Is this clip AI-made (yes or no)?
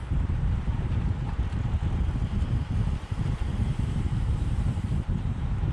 yes